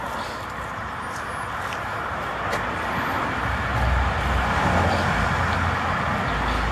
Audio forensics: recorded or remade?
recorded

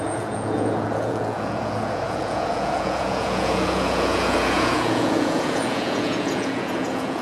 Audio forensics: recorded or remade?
remade